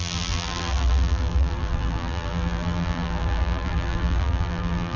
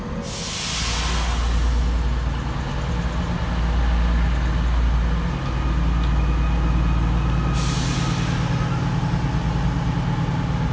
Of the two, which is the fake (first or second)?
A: first